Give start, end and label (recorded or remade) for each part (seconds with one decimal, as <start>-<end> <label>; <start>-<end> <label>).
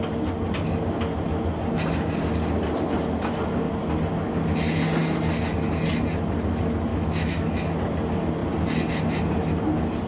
0.0-6.9 recorded; 6.9-7.6 remade; 7.6-10.1 recorded